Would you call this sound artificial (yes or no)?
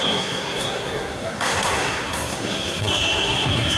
yes